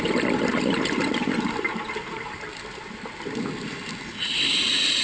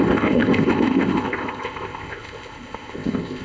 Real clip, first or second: first